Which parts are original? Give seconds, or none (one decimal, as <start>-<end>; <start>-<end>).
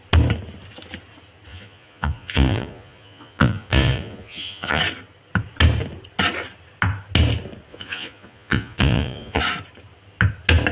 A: 0.0-1.5; 4.8-7.7; 9.4-10.7